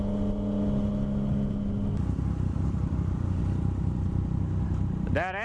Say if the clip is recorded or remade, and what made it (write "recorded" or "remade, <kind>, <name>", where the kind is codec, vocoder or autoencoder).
recorded